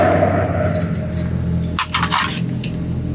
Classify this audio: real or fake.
real